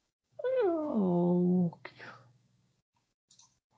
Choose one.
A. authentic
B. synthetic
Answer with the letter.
B